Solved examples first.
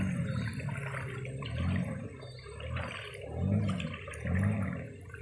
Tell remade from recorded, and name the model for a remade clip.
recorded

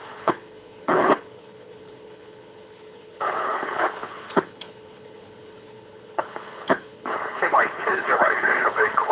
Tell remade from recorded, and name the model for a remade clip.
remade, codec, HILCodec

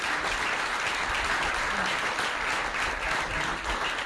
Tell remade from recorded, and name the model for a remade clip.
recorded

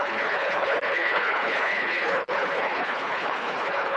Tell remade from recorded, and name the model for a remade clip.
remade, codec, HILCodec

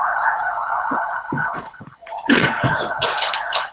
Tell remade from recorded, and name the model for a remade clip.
remade, codec, HILCodec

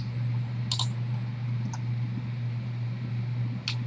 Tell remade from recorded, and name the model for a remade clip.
recorded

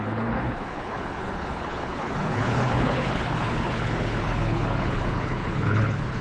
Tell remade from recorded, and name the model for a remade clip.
remade, codec, HILCodec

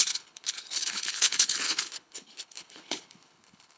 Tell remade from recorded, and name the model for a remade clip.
remade, codec, HILCodec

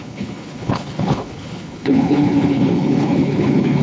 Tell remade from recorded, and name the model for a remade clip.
remade, codec, HILCodec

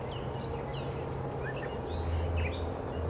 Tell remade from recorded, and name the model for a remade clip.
recorded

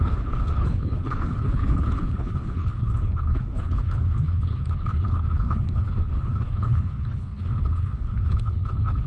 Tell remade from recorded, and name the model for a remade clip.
remade, codec, HILCodec